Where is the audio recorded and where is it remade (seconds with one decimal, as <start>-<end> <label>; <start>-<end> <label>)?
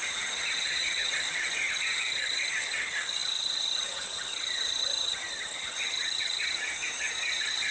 0.0-7.7 remade